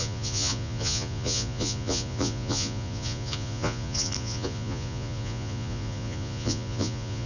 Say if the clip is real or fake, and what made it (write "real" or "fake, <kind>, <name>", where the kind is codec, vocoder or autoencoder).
fake, vocoder, Vocos